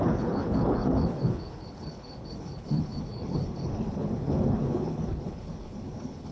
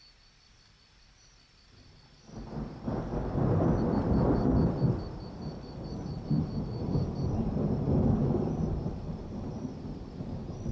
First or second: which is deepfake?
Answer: first